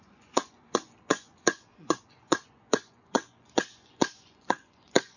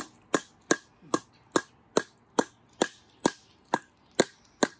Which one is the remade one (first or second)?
first